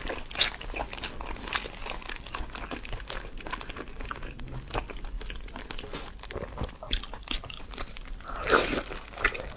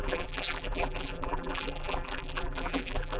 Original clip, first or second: first